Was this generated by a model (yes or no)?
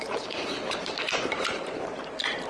yes